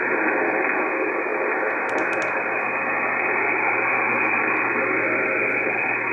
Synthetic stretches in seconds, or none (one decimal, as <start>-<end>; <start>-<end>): none